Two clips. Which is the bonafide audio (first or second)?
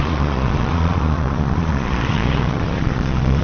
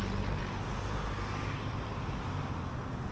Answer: second